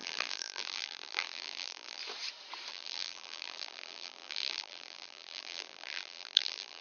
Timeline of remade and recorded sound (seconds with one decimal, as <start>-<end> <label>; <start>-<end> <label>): 0.0-2.0 remade; 2.0-2.7 recorded; 2.7-6.8 remade